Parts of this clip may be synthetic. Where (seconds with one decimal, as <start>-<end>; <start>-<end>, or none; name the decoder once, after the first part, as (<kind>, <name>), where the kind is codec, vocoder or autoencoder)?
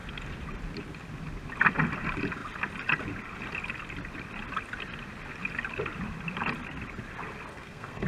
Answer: 7.5-8.1 (codec, SNAC)